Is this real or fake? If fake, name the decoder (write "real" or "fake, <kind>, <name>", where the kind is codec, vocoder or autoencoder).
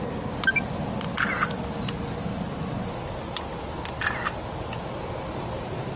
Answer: real